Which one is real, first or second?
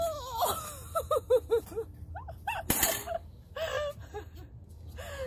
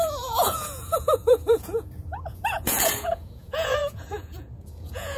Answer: first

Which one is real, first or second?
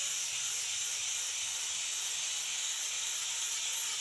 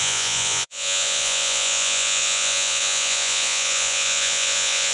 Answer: first